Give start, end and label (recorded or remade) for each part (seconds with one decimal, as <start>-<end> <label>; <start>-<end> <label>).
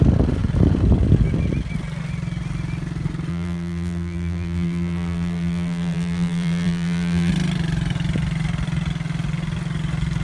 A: 0.0-3.3 recorded; 3.3-7.3 remade; 7.3-10.2 recorded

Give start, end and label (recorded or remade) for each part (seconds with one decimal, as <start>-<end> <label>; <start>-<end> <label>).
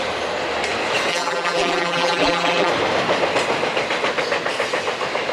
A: 0.0-1.1 recorded; 1.1-2.7 remade; 2.7-5.3 recorded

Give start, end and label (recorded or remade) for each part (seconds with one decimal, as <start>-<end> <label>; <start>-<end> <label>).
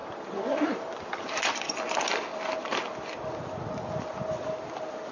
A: 0.0-1.4 remade; 1.4-5.1 recorded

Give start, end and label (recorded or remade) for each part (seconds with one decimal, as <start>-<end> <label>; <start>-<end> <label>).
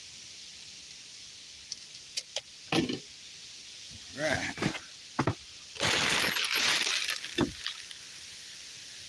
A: 0.0-1.6 remade; 1.6-3.2 recorded; 3.2-9.1 remade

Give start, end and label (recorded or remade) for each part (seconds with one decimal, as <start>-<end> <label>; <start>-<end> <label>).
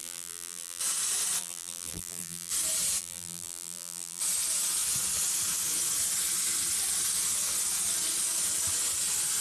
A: 0.0-0.8 remade; 0.8-1.4 recorded; 1.4-2.5 remade; 2.5-3.0 recorded; 3.0-4.2 remade; 4.2-9.4 recorded